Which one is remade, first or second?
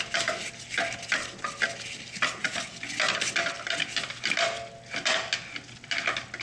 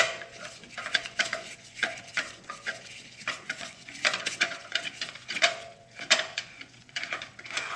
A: second